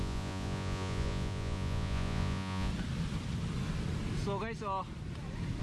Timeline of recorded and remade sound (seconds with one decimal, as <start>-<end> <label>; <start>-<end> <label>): 0.0-2.7 remade; 2.7-5.6 recorded